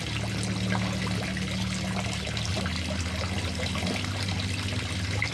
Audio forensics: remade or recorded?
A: recorded